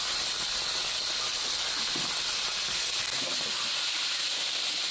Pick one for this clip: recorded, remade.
recorded